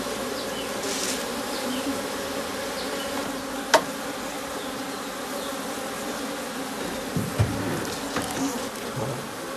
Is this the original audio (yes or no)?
yes